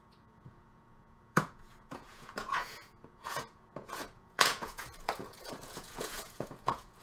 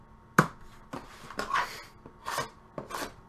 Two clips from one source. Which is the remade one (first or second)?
first